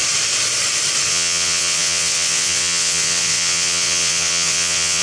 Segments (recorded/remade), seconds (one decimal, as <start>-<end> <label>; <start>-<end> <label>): 0.0-1.1 recorded; 1.1-5.0 remade